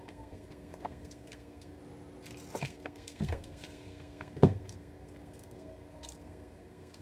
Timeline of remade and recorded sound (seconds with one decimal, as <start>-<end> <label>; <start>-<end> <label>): 0.0-1.8 remade; 1.8-2.6 recorded; 2.6-7.0 remade